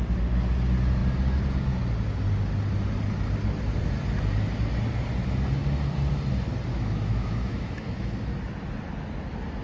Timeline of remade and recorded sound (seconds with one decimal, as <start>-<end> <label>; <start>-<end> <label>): 0.0-6.7 recorded; 6.7-8.4 remade; 8.4-9.6 recorded